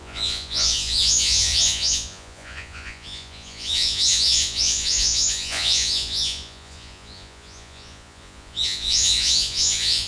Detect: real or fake fake